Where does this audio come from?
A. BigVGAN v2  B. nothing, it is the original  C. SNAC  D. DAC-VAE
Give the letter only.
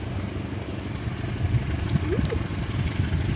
B